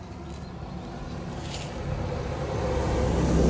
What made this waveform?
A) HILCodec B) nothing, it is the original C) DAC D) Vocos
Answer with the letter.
B